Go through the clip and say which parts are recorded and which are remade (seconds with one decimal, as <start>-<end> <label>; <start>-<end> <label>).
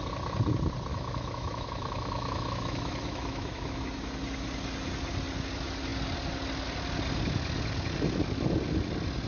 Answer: 0.0-0.9 recorded; 0.9-3.8 remade; 3.8-9.3 recorded